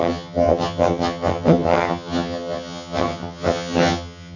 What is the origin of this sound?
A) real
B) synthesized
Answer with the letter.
B